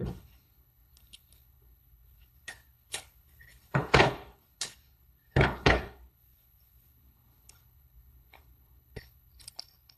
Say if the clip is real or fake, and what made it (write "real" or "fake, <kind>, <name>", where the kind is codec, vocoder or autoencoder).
fake, codec, HILCodec